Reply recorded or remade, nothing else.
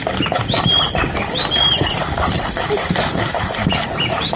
remade